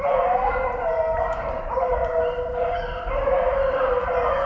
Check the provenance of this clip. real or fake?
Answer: fake